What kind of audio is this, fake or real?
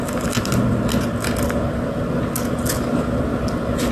real